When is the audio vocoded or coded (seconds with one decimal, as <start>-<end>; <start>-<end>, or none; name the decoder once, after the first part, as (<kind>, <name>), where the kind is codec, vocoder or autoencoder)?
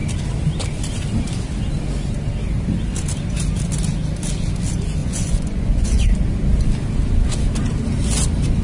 5.0-6.0 (vocoder, Vocos)